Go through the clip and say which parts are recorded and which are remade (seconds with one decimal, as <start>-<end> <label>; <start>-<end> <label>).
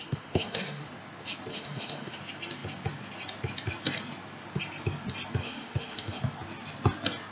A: 0.0-0.9 remade; 0.9-1.5 recorded; 1.5-2.2 remade; 2.2-5.4 recorded; 5.4-6.2 remade; 6.2-7.3 recorded